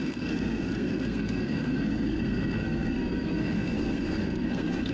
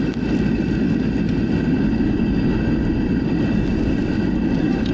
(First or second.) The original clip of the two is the second